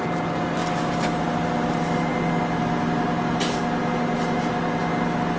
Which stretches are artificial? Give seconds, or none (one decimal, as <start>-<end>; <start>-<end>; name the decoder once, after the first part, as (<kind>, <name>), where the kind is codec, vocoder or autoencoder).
0.0-2.1 (vocoder, BigVGAN v2)